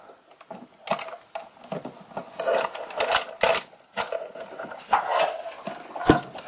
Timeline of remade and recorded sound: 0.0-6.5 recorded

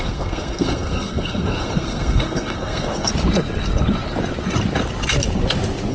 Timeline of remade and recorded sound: 0.0-3.1 remade; 3.1-5.9 recorded

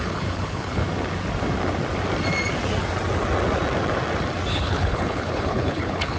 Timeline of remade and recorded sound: 0.0-0.8 remade; 0.8-4.5 recorded; 4.5-6.2 remade

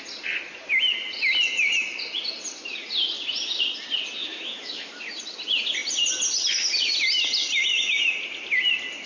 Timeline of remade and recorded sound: 0.0-4.2 recorded; 4.2-5.0 remade; 5.0-9.1 recorded

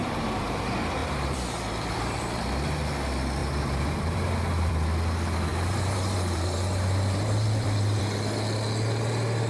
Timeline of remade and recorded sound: 0.0-0.6 remade; 0.6-1.0 recorded; 1.0-2.4 remade; 2.4-3.4 recorded; 3.4-4.7 remade; 4.7-5.5 recorded; 5.5-8.0 remade; 8.0-9.5 recorded

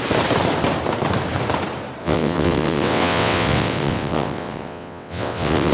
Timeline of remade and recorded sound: 0.0-2.0 recorded; 2.0-5.7 remade

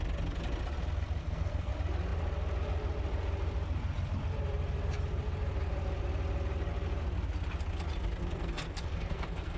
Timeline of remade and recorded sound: 0.0-1.2 recorded; 1.2-1.7 remade; 1.7-8.2 recorded; 8.2-9.6 remade